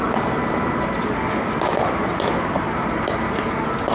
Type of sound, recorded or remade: recorded